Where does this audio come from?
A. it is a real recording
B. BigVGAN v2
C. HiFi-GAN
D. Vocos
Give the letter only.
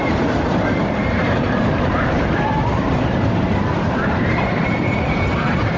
B